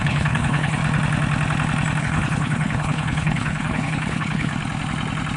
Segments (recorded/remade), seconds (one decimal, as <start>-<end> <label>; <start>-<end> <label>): 0.0-0.8 remade; 0.8-2.0 recorded; 2.0-4.5 remade; 4.5-5.4 recorded